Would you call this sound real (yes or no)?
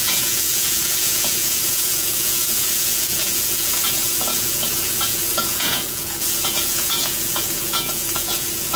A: no